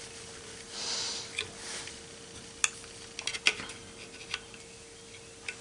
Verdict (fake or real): real